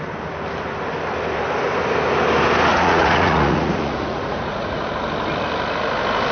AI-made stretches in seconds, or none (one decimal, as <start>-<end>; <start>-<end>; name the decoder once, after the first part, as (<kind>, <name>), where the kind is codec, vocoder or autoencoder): 2.7-4.9 (vocoder, Vocos)